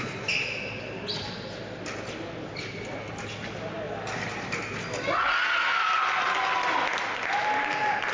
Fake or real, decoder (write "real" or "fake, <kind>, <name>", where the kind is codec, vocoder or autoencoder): real